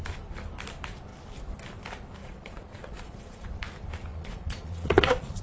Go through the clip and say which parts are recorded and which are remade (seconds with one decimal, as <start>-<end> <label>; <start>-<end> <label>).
0.0-2.2 recorded; 2.2-3.5 remade; 3.5-4.1 recorded; 4.1-5.4 remade